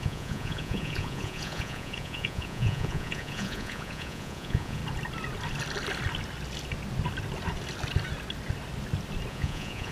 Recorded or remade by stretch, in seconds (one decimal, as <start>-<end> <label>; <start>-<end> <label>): 0.0-4.8 remade; 4.8-9.3 recorded; 9.3-9.9 remade